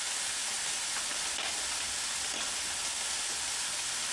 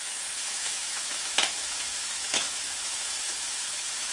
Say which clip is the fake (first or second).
second